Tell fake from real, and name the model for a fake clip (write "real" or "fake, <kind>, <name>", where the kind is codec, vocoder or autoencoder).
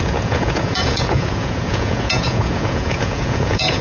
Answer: fake, vocoder, Vocos